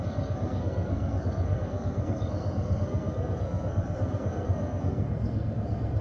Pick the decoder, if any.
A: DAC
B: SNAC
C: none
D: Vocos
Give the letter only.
B